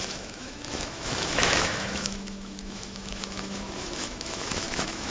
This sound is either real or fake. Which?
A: fake